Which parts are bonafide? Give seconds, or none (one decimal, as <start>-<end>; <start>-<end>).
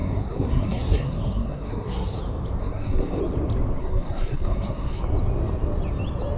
2.2-2.6; 3.2-3.8; 5.0-6.4